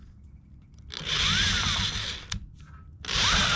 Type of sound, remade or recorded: recorded